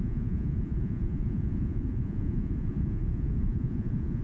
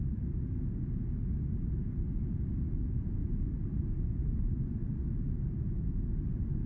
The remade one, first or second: first